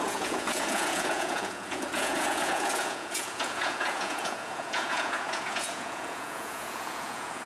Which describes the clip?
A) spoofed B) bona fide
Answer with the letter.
A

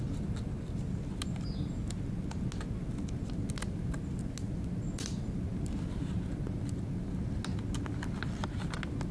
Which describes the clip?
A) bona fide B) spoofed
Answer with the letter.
A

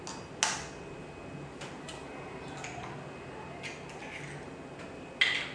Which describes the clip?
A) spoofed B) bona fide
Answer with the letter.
B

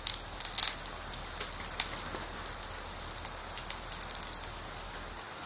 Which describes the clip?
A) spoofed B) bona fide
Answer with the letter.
B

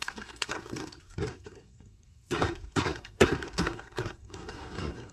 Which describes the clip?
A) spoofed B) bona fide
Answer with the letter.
A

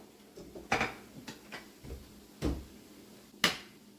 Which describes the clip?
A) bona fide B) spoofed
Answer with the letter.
A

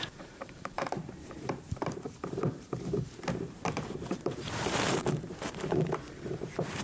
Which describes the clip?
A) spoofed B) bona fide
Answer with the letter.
A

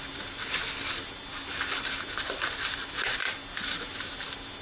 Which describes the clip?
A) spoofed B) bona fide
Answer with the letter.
B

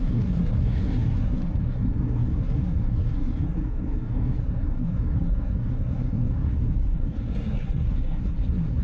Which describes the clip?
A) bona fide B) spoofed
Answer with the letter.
B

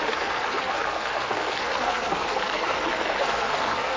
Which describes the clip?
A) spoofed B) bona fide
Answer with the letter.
A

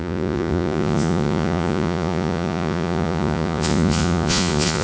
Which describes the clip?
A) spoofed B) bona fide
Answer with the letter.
A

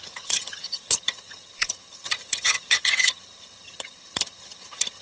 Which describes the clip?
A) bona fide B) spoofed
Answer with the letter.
B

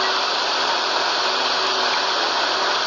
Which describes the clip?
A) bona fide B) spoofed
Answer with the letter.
A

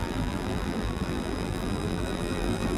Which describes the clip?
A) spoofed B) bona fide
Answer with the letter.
A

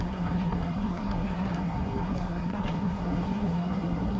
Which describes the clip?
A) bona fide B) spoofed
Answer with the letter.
B